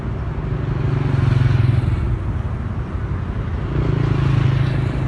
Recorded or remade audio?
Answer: recorded